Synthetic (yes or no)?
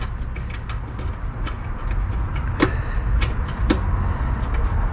no